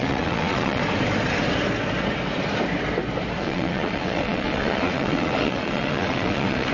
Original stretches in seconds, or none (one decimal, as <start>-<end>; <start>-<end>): 0.8-3.4